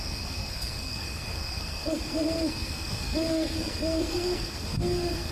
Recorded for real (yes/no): no